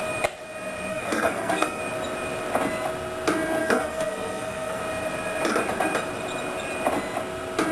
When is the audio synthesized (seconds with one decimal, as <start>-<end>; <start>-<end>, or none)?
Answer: 0.9-1.8; 3.6-4.8